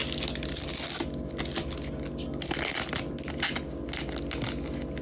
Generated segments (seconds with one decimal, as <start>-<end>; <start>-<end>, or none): none